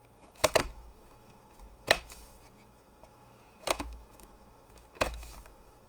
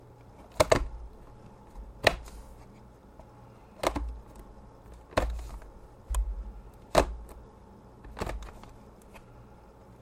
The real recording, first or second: second